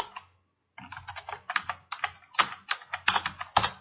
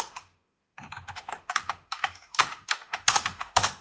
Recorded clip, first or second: first